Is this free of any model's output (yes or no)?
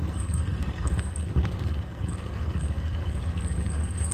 no